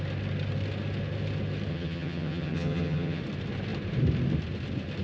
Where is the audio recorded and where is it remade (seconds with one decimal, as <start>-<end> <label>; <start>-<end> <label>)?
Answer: 0.0-1.7 recorded; 1.7-3.2 remade; 3.2-5.0 recorded